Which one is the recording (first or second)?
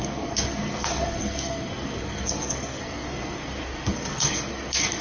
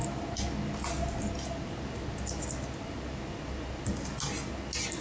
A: second